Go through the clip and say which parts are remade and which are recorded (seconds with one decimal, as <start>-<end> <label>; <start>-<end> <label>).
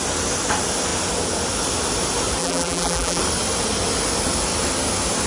0.0-2.4 recorded; 2.4-3.2 remade; 3.2-5.3 recorded